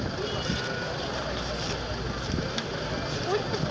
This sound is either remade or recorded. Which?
recorded